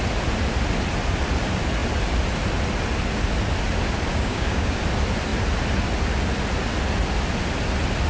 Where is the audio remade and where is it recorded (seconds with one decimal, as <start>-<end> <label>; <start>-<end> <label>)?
0.0-4.1 recorded; 4.1-4.8 remade; 4.8-8.1 recorded